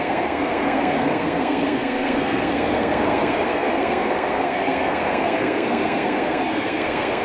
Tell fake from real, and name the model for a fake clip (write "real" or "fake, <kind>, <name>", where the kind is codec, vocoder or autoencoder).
fake, codec, SNAC